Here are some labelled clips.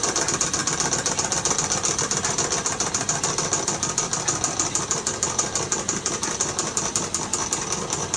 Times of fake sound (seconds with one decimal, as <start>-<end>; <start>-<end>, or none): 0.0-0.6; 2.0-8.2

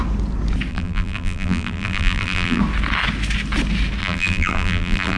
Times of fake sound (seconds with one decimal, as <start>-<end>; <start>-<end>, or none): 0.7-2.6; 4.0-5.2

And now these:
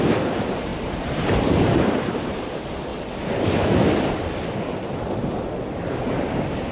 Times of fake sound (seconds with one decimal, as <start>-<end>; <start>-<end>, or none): 0.0-2.9; 6.3-6.7

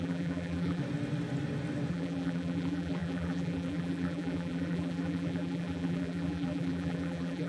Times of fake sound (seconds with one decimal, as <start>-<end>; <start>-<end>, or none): 0.0-0.8; 1.9-7.5

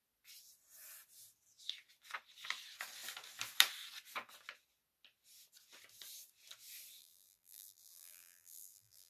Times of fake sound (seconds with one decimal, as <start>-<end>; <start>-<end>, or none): 7.0-9.1

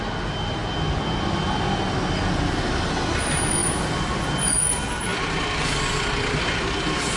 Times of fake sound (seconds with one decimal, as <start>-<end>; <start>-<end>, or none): 3.6-4.2; 5.1-6.4

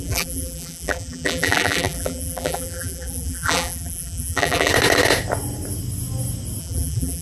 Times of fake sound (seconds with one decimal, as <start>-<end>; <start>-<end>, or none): 0.0-4.7; 6.6-7.2

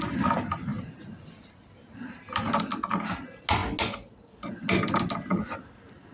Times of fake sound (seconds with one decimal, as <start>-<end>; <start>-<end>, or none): 0.7-2.6